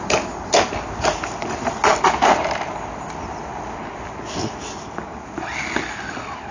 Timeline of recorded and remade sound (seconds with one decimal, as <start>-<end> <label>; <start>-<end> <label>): 0.0-6.5 recorded